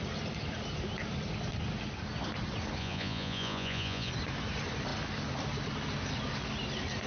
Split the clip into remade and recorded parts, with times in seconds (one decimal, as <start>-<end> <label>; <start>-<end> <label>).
0.0-2.8 recorded; 2.8-4.1 remade; 4.1-7.1 recorded